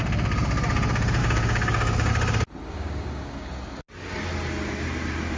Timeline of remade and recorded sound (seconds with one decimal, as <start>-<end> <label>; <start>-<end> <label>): 0.0-1.2 recorded; 1.2-2.1 remade; 2.1-2.6 recorded; 2.6-3.5 remade; 3.5-5.4 recorded